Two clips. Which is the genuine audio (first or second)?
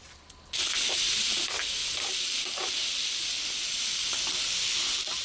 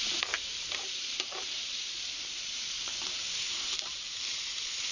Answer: first